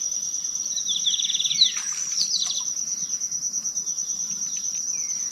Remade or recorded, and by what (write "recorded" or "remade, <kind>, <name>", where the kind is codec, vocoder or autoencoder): recorded